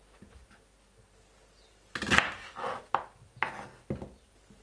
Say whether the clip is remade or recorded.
recorded